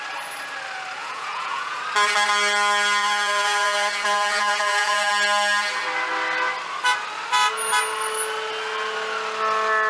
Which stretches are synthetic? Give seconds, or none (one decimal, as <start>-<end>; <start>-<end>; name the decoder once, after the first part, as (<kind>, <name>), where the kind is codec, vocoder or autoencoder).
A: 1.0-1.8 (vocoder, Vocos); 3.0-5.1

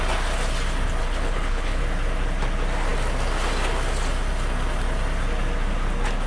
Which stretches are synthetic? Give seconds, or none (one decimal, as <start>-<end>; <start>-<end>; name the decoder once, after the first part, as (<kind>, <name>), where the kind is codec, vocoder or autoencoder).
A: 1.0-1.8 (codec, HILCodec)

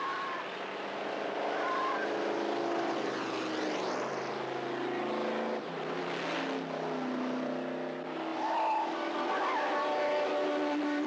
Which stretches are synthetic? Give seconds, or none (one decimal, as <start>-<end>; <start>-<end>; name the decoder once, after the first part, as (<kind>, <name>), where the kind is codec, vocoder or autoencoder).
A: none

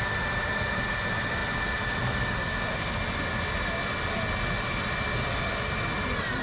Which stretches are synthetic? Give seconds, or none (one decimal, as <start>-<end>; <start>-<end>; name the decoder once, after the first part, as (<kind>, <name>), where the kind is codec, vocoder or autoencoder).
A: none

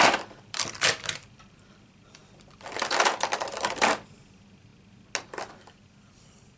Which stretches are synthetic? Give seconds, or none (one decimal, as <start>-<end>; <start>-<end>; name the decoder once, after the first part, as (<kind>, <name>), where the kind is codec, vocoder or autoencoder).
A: 0.0-4.7 (vocoder, BigVGAN v2); 5.5-6.6

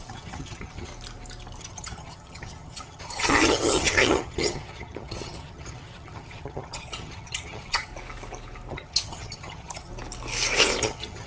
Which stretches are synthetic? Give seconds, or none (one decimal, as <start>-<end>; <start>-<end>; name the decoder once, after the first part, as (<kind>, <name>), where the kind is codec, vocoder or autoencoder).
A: 0.0-0.9 (vocoder, HiFi-GAN); 1.6-7.9; 8.7-9.9; 10.8-11.3

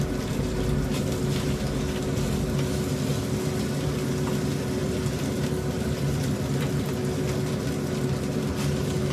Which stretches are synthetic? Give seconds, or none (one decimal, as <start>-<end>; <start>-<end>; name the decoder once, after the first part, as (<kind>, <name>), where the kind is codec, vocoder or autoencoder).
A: 4.8-6.9 (vocoder, BigVGAN v2)